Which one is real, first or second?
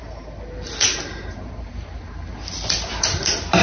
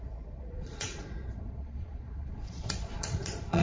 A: first